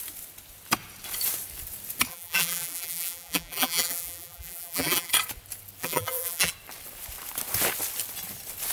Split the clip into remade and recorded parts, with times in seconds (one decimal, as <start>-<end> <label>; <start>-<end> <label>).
0.0-2.1 recorded; 2.1-5.1 remade; 5.1-5.8 recorded; 5.8-6.5 remade; 6.5-8.7 recorded